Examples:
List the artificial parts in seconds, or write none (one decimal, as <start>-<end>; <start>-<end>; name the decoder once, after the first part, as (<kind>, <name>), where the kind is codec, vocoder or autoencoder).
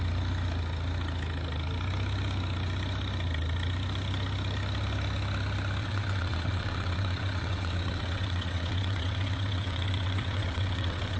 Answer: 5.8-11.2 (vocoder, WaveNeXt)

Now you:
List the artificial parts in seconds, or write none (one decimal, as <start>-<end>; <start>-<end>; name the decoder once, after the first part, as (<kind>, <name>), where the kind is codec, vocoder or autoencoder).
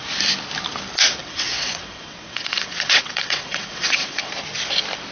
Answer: 1.2-4.3 (vocoder, WaveNeXt)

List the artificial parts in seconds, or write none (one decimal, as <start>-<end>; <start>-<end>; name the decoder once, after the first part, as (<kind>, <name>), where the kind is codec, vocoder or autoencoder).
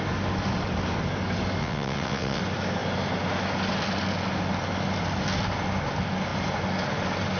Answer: 1.6-2.4 (vocoder, WaveNeXt)